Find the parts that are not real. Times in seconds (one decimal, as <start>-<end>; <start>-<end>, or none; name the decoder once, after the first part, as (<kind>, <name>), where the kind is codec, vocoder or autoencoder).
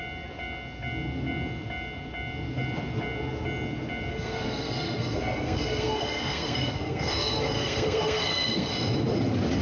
4.1-8.7 (codec, SNAC)